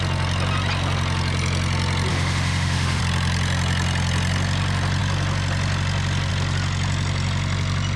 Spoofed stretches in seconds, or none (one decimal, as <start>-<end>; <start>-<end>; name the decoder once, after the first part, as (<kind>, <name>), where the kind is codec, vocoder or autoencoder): 2.1-3.0 (autoencoder, DAC-VAE)